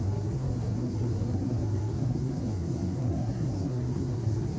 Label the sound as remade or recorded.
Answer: remade